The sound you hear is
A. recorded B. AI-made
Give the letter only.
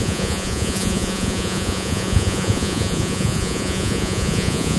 B